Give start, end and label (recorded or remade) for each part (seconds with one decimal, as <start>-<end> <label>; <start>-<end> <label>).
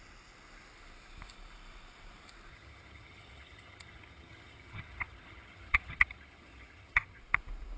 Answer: 0.0-2.5 recorded; 2.5-7.2 remade; 7.2-7.8 recorded